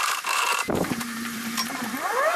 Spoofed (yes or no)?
yes